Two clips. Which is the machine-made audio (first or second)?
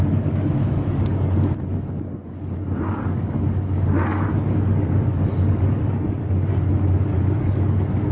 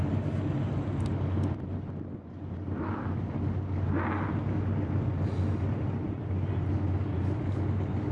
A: first